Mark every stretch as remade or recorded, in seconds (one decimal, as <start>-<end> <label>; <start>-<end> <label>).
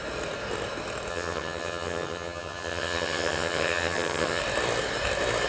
0.0-1.1 recorded; 1.1-4.4 remade; 4.4-5.5 recorded